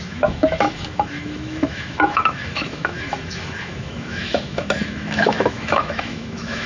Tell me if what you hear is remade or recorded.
remade